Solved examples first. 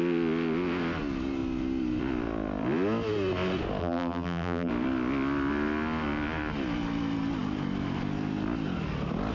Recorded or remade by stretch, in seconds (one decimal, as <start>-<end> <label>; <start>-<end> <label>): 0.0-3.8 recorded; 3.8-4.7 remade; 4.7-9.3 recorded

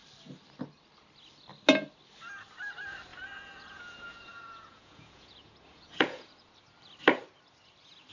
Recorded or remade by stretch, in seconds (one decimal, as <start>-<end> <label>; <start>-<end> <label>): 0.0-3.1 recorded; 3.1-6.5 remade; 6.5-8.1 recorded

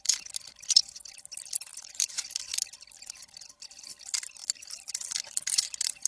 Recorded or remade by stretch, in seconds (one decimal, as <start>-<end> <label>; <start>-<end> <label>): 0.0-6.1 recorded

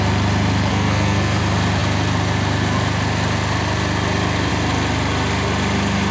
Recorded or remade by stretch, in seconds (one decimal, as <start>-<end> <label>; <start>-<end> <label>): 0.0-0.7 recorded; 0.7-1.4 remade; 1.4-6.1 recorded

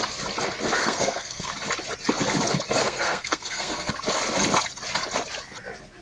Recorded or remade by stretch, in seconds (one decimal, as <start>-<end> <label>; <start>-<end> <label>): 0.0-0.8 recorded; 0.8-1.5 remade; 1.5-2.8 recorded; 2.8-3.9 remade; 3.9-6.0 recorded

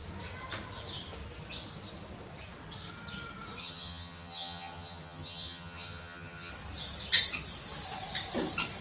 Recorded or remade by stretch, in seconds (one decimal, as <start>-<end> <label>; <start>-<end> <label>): 0.0-3.6 recorded; 3.6-6.5 remade; 6.5-8.8 recorded

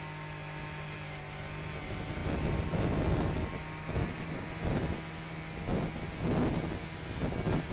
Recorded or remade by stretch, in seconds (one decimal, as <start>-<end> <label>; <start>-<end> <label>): 0.0-7.7 recorded